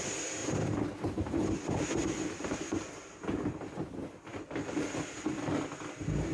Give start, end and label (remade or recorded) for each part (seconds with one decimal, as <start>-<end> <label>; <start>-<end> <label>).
0.0-0.4 recorded; 0.4-3.5 remade; 3.5-6.3 recorded